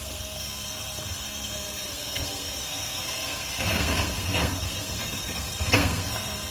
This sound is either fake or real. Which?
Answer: fake